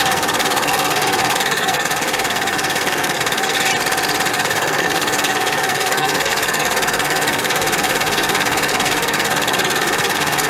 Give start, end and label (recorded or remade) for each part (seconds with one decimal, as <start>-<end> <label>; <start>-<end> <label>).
0.0-3.7 remade; 3.7-4.3 recorded; 4.3-10.5 remade